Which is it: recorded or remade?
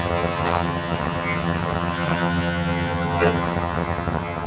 remade